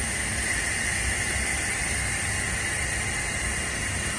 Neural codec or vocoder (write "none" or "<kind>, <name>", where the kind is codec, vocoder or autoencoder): none